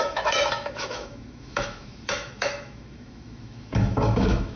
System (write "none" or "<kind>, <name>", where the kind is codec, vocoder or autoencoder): autoencoder, DAC-VAE